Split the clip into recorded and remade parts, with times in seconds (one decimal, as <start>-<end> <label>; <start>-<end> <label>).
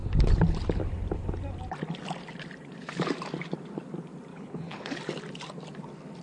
0.0-4.3 recorded; 4.3-5.0 remade; 5.0-6.2 recorded